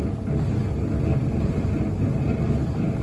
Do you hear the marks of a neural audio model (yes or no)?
no